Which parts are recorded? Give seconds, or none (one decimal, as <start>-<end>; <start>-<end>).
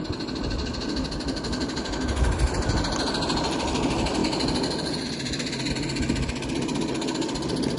0.0-7.8